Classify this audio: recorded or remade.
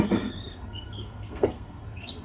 remade